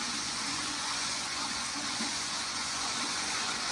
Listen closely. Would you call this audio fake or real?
fake